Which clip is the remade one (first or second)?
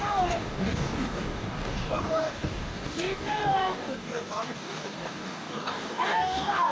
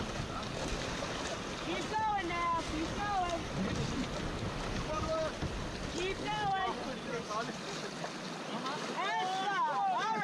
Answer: first